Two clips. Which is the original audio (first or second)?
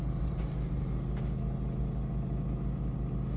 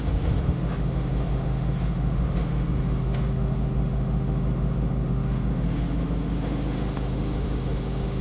first